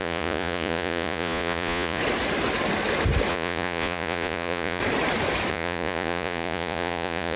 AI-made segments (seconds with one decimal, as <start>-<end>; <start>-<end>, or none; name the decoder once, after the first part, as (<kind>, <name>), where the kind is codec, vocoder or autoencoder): 0.0-2.0 (vocoder, Vocos); 3.3-4.8; 5.5-7.4